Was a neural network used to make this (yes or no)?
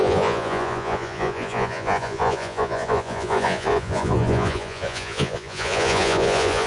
yes